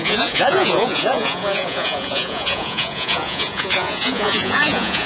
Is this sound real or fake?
fake